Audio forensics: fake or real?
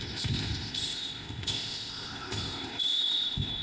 fake